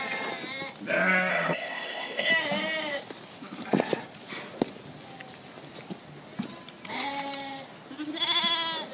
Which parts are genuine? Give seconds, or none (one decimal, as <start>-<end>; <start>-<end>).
0.0-1.3; 2.3-8.9